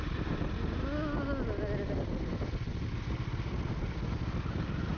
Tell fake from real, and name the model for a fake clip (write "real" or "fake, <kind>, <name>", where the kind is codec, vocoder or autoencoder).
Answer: real